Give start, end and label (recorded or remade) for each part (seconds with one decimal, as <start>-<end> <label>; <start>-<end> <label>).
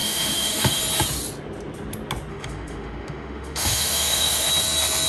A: 0.0-0.8 remade; 0.8-2.3 recorded; 2.3-4.5 remade; 4.5-5.1 recorded